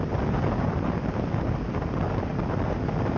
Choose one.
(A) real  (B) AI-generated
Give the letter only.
A